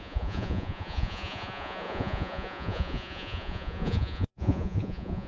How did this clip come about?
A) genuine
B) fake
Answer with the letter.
B